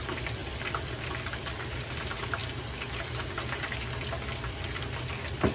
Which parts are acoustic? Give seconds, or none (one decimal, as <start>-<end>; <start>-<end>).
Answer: 2.4-5.5

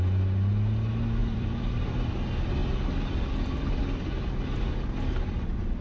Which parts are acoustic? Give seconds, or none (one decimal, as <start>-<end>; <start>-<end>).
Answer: 0.0-1.2; 2.1-2.6; 4.6-5.8

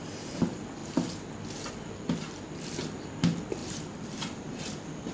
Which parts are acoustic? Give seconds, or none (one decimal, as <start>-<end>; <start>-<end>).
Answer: 0.8-3.2

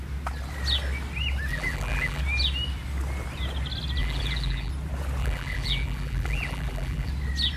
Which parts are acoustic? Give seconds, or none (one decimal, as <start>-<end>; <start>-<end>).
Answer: 0.0-1.5; 2.2-4.0; 4.7-5.2; 7.1-7.6

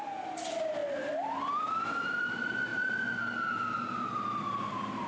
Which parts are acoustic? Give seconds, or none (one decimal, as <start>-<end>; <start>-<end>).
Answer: 0.8-1.4; 2.7-5.1

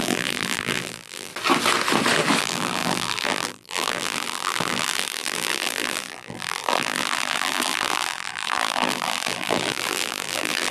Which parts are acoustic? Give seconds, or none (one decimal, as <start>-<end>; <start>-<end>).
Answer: 1.3-2.4

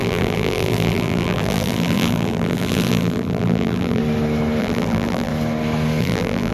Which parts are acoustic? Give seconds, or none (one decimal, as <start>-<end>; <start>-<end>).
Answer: 4.0-4.6; 5.3-6.0